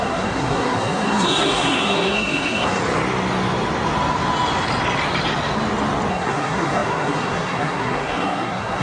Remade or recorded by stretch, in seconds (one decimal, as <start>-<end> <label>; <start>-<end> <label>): 0.0-2.8 remade; 2.8-6.1 recorded; 6.1-8.8 remade